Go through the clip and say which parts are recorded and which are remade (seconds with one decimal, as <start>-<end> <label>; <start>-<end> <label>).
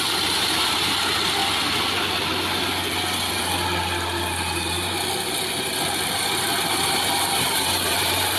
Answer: 0.0-1.4 remade; 1.4-6.2 recorded; 6.2-8.4 remade